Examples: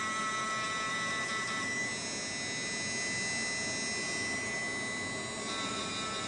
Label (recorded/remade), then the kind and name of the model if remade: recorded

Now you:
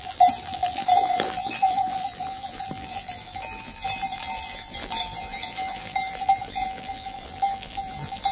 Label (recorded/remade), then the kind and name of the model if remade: remade, vocoder, BigVGAN v2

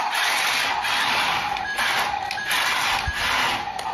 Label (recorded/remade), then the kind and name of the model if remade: recorded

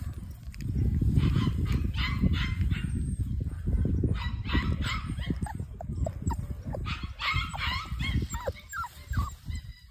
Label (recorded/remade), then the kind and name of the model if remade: recorded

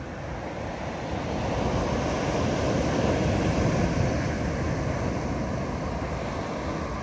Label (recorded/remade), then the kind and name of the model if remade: recorded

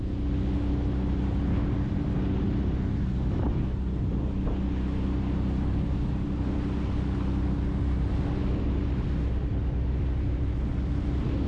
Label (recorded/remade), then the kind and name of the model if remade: recorded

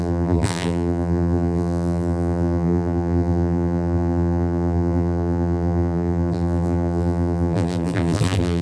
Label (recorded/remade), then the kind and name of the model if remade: remade, vocoder, BigVGAN v2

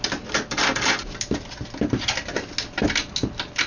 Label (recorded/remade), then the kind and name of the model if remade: recorded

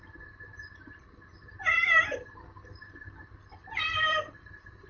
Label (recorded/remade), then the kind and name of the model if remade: remade, vocoder, BigVGAN v2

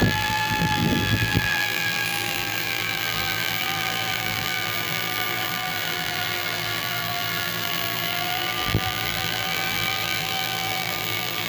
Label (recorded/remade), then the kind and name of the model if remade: remade, vocoder, BigVGAN v2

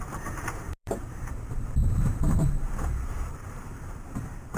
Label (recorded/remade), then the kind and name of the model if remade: remade, vocoder, BigVGAN v2